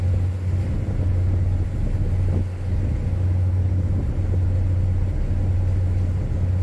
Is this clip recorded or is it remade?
recorded